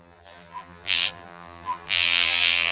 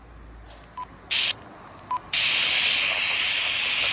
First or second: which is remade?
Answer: first